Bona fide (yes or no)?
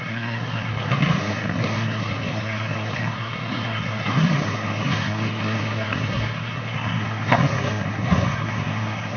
no